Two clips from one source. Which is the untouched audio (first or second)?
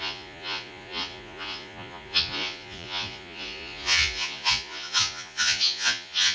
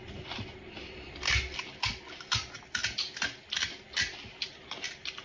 second